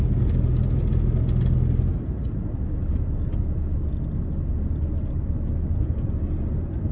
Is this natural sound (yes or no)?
yes